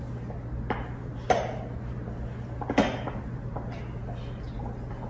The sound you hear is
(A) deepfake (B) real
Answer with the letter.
B